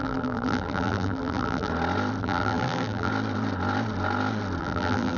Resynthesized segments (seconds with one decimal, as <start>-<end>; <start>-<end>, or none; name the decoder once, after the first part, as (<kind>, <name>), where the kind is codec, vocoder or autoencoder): 0.0-1.7 (vocoder, BigVGAN v2); 2.2-3.1; 4.6-5.2